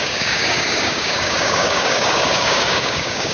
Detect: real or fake fake